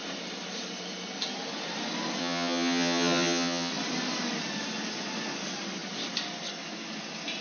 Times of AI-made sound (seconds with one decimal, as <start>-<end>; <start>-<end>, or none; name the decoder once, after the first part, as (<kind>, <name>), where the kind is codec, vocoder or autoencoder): 2.2-3.7 (vocoder, HiFi-GAN)